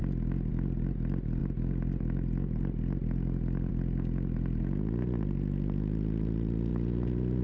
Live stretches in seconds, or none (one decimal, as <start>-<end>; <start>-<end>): 0.0-7.4